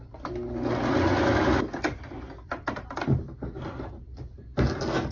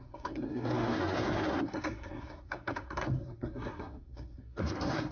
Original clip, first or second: first